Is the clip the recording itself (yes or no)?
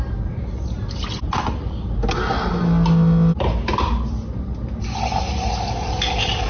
yes